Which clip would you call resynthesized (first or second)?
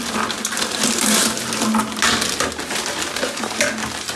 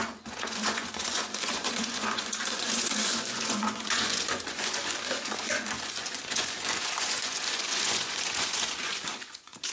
second